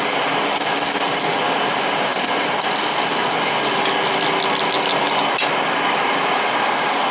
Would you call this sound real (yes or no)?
yes